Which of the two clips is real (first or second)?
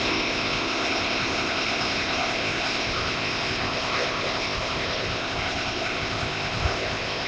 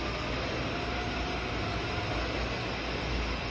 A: second